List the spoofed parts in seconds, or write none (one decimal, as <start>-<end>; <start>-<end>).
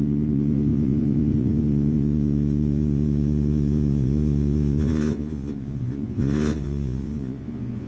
0.0-7.9